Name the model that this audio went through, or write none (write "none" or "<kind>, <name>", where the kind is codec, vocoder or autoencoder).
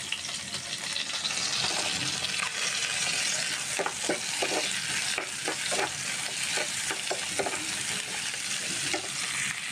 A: none